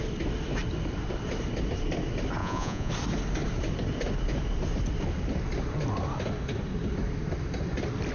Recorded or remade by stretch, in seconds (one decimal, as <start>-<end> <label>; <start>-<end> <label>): 0.0-2.4 recorded; 2.4-2.9 remade; 2.9-8.1 recorded